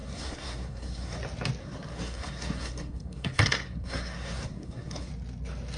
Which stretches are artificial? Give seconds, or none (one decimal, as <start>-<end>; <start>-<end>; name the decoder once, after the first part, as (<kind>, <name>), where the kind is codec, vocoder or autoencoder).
0.0-1.2 (codec, SNAC); 1.6-5.1